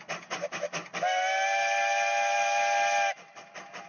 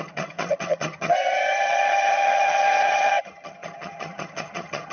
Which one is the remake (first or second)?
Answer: second